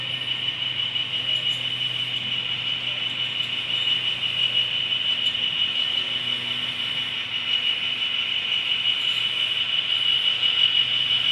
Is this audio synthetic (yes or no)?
no